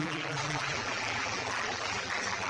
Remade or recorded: remade